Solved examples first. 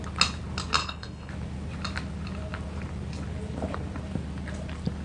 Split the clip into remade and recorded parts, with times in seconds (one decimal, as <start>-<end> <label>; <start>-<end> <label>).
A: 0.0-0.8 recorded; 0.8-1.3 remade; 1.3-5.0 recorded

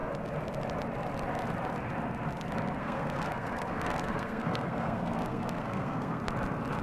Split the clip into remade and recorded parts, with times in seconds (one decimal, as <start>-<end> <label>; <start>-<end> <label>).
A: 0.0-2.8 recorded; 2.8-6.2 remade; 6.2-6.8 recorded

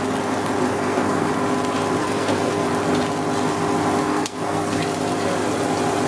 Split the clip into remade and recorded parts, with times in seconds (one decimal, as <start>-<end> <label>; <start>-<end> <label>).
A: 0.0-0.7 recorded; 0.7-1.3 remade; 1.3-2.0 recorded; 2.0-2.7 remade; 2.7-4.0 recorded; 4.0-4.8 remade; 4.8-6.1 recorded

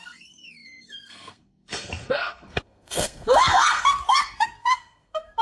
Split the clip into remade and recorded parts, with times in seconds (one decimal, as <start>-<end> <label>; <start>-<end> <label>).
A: 0.0-5.4 remade

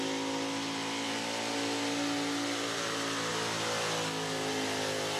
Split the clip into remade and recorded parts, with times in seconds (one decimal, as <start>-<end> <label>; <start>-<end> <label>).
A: 0.0-5.2 recorded

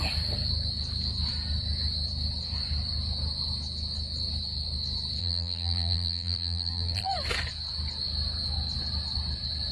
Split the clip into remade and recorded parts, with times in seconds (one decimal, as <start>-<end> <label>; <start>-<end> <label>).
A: 0.0-5.2 recorded; 5.2-7.1 remade; 7.1-9.7 recorded

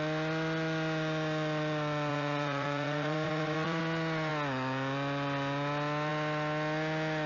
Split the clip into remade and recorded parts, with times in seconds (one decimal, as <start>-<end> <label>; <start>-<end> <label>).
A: 0.0-2.1 recorded; 2.1-3.8 remade; 3.8-7.3 recorded

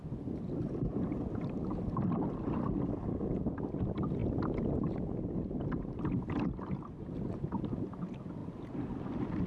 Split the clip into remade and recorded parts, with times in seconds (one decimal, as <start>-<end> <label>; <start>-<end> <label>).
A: 0.0-9.5 recorded